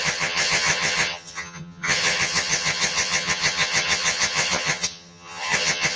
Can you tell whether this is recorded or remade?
remade